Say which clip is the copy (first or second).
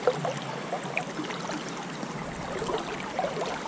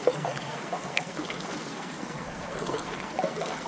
second